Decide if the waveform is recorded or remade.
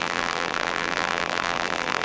remade